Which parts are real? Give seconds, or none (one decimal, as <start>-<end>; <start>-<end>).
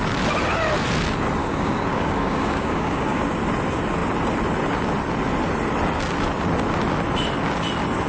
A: 0.0-1.4; 3.2-8.1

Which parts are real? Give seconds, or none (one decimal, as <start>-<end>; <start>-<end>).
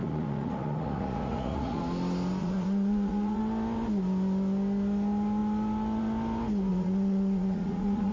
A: 1.8-2.4; 3.4-6.7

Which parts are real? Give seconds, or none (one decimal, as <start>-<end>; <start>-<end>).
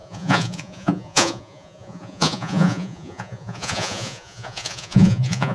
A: none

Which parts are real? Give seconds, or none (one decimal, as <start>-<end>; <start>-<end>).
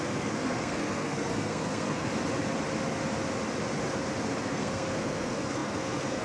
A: 2.1-4.4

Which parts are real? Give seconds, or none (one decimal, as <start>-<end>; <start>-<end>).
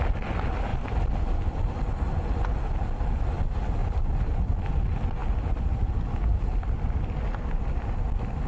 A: 0.0-3.8; 4.7-8.5